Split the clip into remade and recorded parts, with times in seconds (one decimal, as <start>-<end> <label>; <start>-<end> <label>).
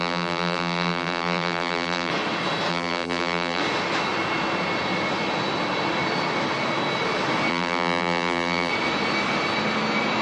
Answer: 0.0-2.1 remade; 2.1-2.7 recorded; 2.7-3.6 remade; 3.6-7.5 recorded; 7.5-8.7 remade; 8.7-10.2 recorded